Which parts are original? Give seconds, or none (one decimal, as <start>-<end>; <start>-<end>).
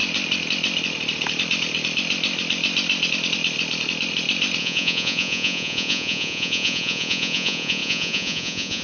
0.0-4.6